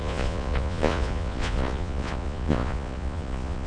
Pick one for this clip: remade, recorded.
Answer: remade